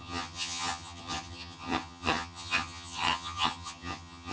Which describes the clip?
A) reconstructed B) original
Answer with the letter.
A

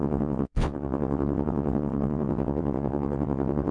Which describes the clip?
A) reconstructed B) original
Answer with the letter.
A